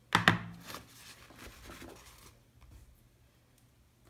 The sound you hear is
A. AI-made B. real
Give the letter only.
B